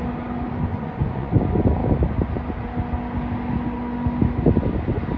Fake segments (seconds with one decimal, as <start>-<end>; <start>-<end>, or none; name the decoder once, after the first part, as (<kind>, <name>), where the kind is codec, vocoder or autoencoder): 0.7-1.3 (vocoder, Vocos)